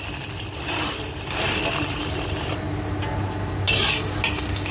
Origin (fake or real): real